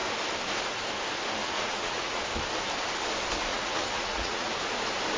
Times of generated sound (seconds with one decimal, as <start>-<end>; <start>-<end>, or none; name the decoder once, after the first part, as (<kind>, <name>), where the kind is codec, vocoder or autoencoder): 1.4-2.2 (vocoder, Vocos); 3.5-4.5

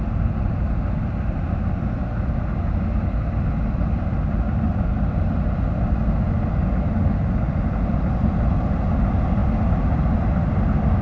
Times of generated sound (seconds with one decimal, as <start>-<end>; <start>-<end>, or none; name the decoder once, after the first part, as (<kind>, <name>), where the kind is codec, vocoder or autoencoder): none

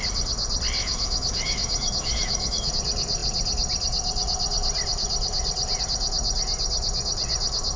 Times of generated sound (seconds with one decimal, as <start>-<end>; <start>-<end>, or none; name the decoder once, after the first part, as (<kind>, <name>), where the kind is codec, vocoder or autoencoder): 0.8-2.7 (autoencoder, DAC-VAE)

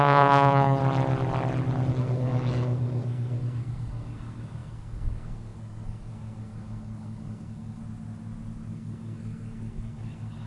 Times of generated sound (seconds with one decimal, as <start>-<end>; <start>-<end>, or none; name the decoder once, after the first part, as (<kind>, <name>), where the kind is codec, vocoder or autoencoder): 0.0-0.8 (codec, SNAC); 1.9-7.8; 8.7-10.5

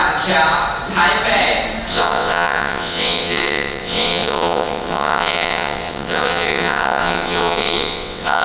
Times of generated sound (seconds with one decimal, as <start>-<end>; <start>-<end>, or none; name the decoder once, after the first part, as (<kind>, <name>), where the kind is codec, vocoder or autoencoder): 1.9-8.4 (vocoder, WaveNeXt)

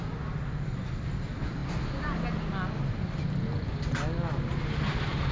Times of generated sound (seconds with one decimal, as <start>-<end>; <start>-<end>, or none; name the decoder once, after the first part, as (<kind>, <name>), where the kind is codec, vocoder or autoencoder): none